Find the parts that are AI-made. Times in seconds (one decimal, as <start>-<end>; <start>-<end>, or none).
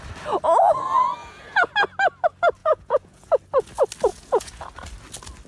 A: 1.2-1.7; 2.6-3.3; 4.1-4.7